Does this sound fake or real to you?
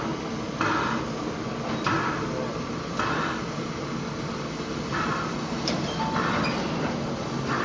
real